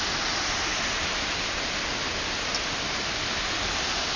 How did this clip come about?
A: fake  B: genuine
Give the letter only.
B